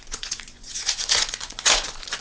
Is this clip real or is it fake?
fake